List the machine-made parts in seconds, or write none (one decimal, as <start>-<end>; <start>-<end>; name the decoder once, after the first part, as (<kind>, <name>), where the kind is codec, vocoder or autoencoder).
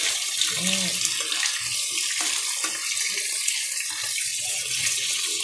4.3-5.4 (vocoder, WaveNeXt)